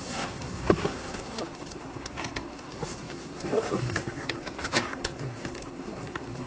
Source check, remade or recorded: remade